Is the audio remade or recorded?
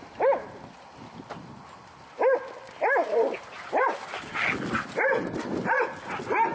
recorded